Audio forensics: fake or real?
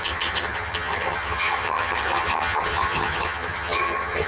fake